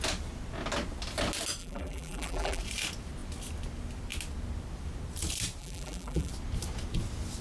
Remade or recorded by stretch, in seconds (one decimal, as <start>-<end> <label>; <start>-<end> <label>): 0.0-1.6 recorded; 1.6-2.6 remade; 2.6-5.6 recorded; 5.6-6.3 remade; 6.3-7.4 recorded